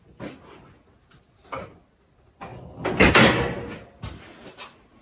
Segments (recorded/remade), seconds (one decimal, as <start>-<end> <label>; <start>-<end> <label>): 0.0-5.0 recorded